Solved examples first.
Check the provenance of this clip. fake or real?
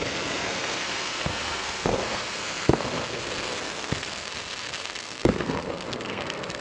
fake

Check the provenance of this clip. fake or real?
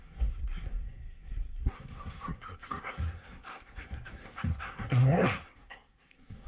fake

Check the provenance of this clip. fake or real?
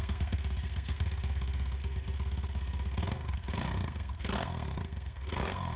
fake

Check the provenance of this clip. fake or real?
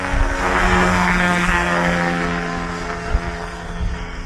fake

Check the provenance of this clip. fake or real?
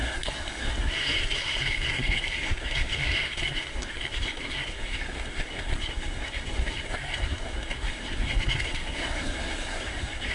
fake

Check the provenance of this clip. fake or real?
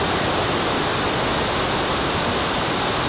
real